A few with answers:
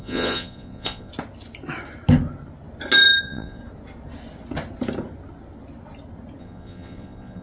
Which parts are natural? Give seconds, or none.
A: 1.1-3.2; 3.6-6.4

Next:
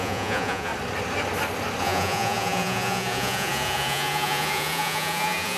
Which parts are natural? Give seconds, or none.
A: 0.7-1.8

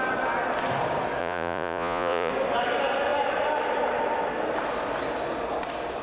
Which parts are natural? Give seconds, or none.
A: 0.0-1.2; 2.3-6.0

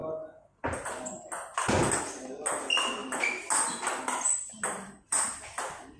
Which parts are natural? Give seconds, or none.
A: 0.0-6.0

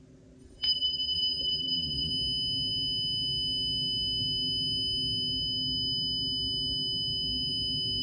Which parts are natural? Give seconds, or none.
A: 0.0-0.4; 2.1-8.0